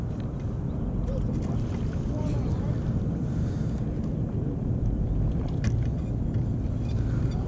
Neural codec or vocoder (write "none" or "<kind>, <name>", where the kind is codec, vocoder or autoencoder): none